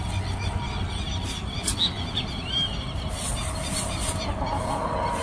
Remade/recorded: recorded